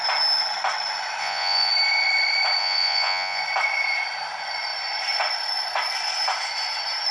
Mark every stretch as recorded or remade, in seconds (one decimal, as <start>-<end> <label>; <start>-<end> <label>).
0.0-1.2 recorded; 1.2-1.7 remade; 1.7-2.6 recorded; 2.6-3.4 remade; 3.4-7.1 recorded